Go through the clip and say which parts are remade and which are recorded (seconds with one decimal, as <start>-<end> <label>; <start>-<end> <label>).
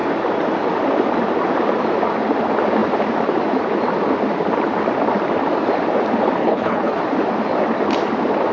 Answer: 0.0-6.4 recorded; 6.4-7.0 remade; 7.0-8.5 recorded